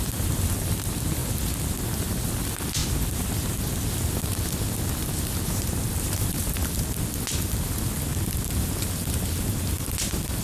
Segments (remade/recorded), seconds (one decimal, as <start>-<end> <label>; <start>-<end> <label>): 0.0-1.2 remade; 1.2-2.0 recorded; 2.0-2.8 remade; 2.8-4.1 recorded; 4.1-6.6 remade; 6.6-7.3 recorded; 7.3-8.1 remade; 8.1-10.0 recorded; 10.0-10.4 remade